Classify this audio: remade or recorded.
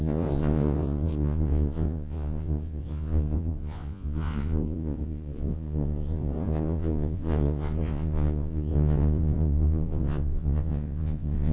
remade